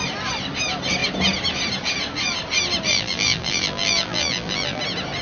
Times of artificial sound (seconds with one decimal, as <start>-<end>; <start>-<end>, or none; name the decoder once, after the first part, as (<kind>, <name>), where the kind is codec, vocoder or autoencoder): 2.9-4.8 (vocoder, BigVGAN v2)